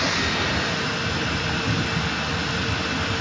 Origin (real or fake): real